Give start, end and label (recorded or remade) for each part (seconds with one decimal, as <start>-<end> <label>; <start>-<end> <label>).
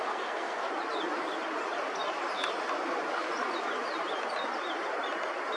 0.0-0.7 remade; 0.7-5.6 recorded